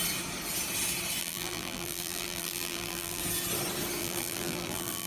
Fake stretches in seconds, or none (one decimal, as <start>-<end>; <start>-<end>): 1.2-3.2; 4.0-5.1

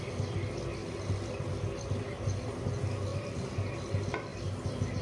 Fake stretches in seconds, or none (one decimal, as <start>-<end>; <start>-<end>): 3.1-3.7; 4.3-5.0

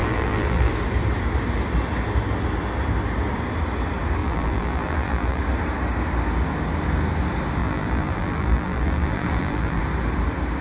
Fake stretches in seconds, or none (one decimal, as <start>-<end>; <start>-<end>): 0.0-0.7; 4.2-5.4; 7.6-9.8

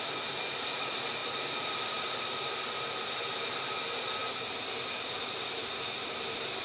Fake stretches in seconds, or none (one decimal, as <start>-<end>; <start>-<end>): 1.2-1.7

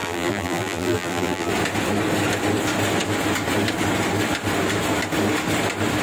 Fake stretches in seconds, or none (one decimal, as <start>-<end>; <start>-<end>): 0.0-1.5

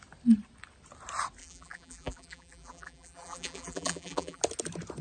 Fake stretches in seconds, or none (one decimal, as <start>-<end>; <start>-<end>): 1.4-4.4